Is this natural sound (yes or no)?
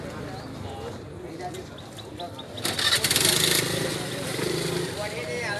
yes